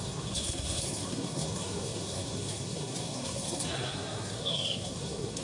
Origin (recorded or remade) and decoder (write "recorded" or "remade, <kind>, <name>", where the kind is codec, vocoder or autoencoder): remade, codec, SNAC